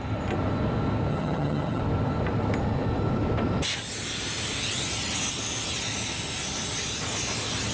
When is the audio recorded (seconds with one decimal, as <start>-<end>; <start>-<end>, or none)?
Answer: 0.0-1.1; 1.8-7.7